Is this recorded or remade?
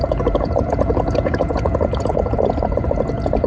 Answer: remade